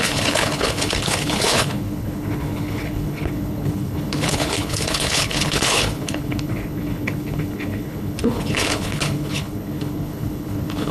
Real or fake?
fake